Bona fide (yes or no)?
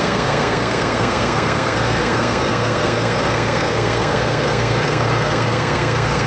no